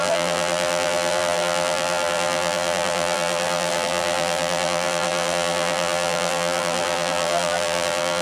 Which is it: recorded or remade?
remade